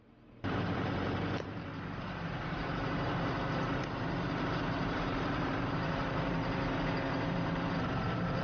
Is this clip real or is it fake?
fake